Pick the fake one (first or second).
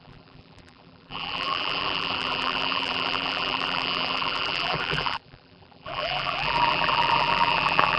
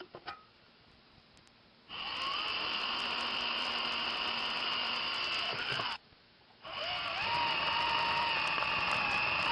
first